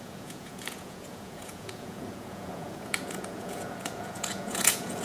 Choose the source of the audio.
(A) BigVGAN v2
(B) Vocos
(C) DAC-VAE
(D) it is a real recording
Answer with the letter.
B